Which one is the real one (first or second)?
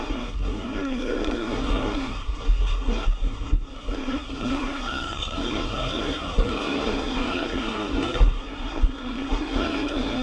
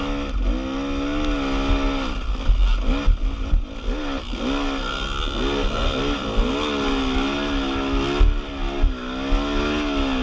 second